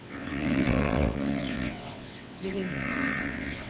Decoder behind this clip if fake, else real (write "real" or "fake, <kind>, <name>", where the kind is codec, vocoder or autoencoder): fake, vocoder, WaveNeXt